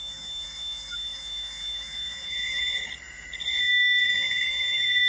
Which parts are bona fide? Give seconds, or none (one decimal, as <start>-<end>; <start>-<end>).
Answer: 2.9-3.6